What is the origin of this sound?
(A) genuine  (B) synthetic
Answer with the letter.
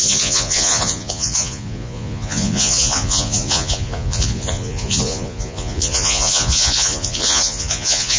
B